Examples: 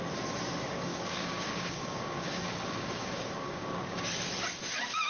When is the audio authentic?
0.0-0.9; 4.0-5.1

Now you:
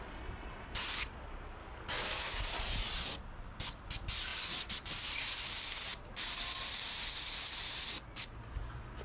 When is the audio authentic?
0.0-1.6; 2.5-9.0

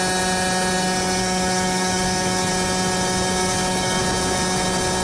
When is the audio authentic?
0.0-1.2; 2.5-3.4; 4.0-5.0

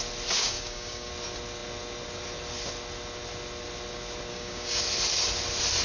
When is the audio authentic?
0.0-0.4; 1.1-4.3; 4.8-5.8

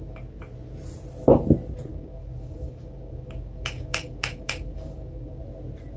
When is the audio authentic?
0.0-1.9; 5.4-6.0

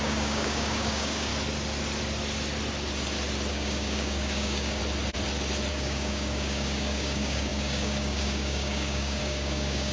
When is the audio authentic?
1.3-3.5; 4.8-5.7

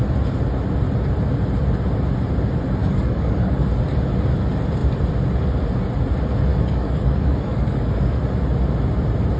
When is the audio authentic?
0.0-2.8; 3.7-6.5; 8.2-9.4

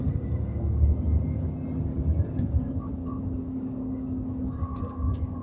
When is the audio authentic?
1.5-1.9